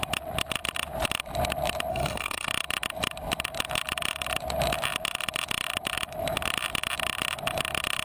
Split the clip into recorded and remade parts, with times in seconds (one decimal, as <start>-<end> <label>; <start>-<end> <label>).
0.0-1.9 recorded; 1.9-2.5 remade; 2.5-8.0 recorded